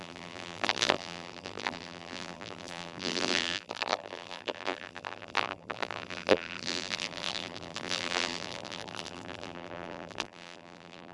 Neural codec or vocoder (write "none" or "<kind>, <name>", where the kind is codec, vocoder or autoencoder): vocoder, BigVGAN v2